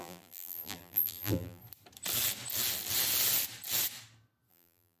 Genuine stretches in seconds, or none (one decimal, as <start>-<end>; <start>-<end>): 1.6-4.5

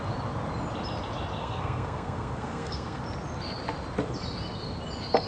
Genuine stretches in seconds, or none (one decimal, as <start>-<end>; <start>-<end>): 0.0-1.4; 3.0-5.3

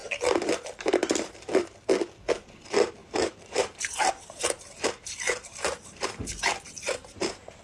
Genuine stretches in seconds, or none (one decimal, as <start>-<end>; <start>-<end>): 1.9-3.0

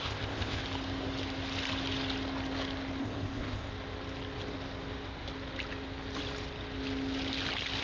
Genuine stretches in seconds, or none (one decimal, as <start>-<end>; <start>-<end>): 0.6-3.0; 3.7-7.8

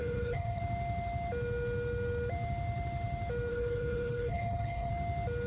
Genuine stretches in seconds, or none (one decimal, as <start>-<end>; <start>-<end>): 0.6-3.5; 4.9-5.5

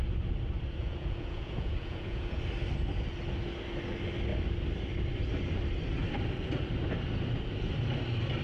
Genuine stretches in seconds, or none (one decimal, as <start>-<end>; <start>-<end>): 0.0-0.8; 2.4-8.4